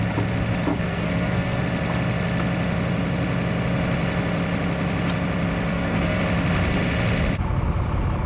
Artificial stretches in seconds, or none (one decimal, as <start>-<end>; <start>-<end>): 0.7-1.6; 5.7-6.2